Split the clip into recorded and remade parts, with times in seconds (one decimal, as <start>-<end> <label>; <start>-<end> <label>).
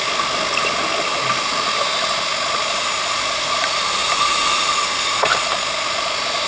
0.0-6.5 recorded